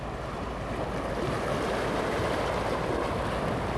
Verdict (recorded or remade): recorded